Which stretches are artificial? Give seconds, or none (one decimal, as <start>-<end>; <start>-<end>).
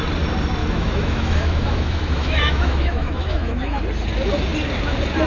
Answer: 0.6-3.8